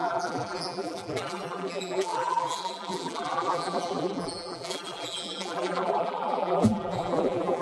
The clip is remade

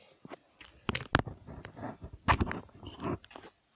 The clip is recorded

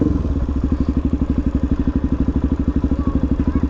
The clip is recorded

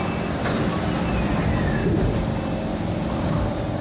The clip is recorded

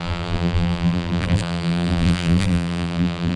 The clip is remade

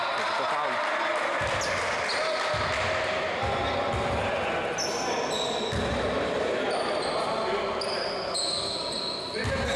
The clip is recorded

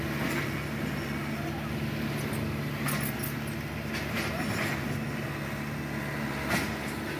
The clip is recorded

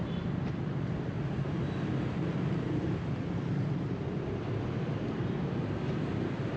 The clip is remade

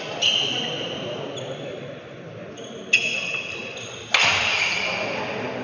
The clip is recorded